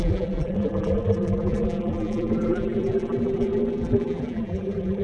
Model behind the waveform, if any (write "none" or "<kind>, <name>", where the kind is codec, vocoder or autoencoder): vocoder, BigVGAN v2